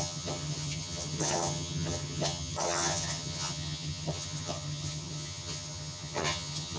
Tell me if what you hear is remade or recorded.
remade